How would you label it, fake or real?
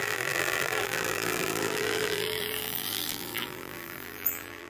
fake